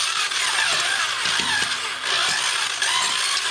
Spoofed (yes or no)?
no